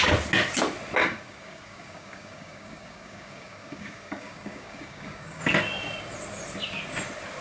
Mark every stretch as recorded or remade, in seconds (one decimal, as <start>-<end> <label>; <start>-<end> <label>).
0.0-1.0 recorded; 1.0-5.4 remade; 5.4-7.4 recorded

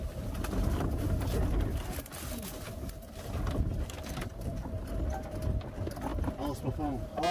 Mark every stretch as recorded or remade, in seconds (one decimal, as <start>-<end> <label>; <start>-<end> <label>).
0.0-4.2 recorded; 4.2-5.1 remade; 5.1-7.3 recorded

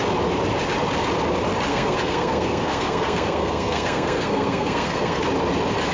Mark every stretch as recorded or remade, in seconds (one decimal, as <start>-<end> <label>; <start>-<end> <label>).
0.0-1.7 recorded; 1.7-5.2 remade; 5.2-5.9 recorded